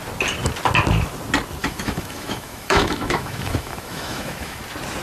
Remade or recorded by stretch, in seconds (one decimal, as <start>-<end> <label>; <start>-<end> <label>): 0.0-1.6 recorded; 1.6-4.6 remade; 4.6-5.0 recorded